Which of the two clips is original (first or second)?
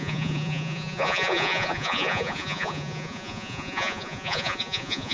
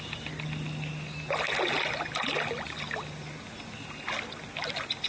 second